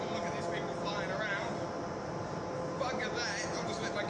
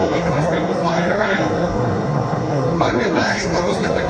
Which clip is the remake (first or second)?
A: second